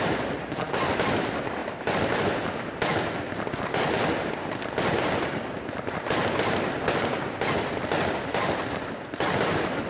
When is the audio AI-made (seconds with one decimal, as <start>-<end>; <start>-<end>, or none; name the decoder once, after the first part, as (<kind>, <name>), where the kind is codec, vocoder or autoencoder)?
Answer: none